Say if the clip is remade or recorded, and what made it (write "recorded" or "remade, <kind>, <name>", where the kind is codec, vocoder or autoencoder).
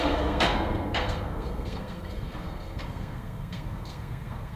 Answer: remade, codec, SNAC